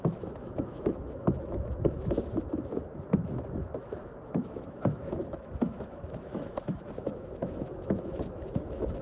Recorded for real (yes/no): no